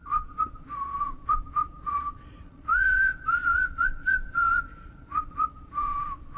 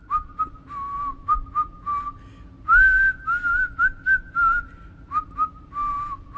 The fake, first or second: first